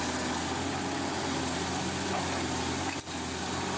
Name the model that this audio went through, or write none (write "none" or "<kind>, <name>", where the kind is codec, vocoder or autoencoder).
none